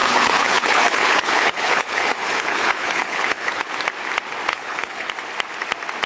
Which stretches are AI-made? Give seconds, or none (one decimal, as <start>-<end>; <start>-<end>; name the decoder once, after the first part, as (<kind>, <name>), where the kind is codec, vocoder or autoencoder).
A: 0.0-3.7 (codec, HILCodec); 4.5-5.1